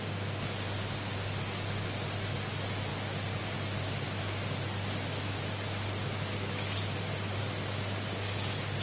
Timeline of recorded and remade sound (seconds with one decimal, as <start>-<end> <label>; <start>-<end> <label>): 0.0-8.8 recorded